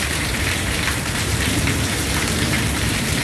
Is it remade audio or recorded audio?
remade